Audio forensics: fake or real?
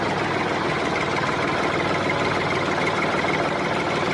real